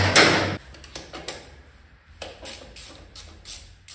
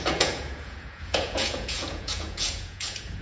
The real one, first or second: first